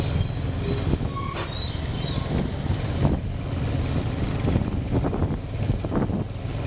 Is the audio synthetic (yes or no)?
no